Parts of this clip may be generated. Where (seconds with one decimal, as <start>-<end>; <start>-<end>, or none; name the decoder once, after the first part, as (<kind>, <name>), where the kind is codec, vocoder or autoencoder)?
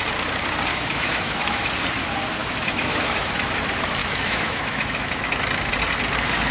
0.7-1.7 (autoencoder, DAC-VAE); 2.4-3.3; 4.0-5.3